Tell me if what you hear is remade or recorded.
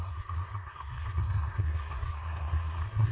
remade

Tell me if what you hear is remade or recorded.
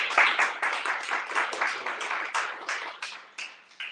recorded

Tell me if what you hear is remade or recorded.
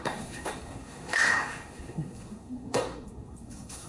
remade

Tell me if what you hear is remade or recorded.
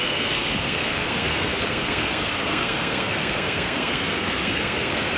remade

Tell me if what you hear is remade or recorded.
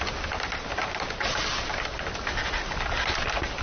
recorded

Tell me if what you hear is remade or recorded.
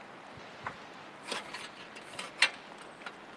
recorded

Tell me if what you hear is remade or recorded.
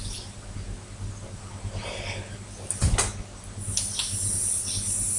recorded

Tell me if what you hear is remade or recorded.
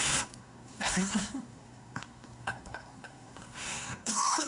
remade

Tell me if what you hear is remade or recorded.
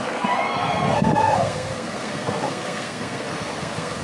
remade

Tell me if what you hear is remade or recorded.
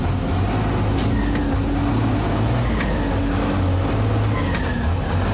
recorded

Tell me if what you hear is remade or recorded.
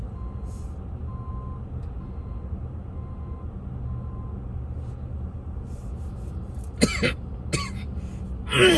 recorded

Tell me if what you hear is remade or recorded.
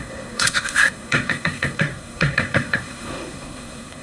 remade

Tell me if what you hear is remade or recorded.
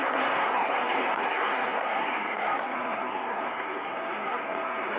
remade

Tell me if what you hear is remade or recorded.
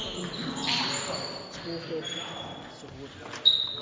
recorded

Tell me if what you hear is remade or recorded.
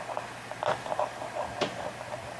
recorded